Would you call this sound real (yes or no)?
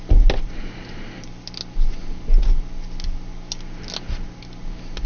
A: yes